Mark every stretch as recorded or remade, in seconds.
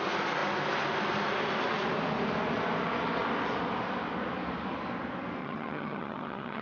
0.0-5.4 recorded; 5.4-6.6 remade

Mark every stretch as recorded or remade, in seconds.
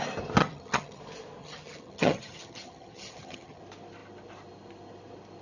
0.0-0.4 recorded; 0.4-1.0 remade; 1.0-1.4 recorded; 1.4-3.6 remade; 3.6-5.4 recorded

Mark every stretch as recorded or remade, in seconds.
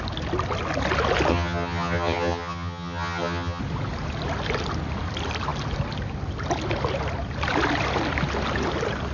0.0-1.3 recorded; 1.3-3.6 remade; 3.6-9.1 recorded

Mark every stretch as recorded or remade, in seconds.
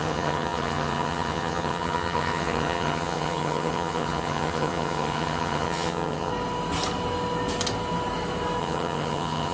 0.0-6.3 remade; 6.3-8.6 recorded; 8.6-9.5 remade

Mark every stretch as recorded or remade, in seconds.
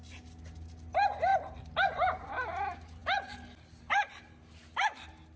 0.0-5.4 recorded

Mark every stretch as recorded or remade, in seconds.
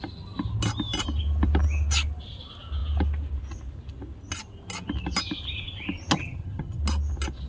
0.0-6.2 recorded; 6.2-6.8 remade; 6.8-7.5 recorded